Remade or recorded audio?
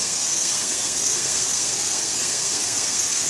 remade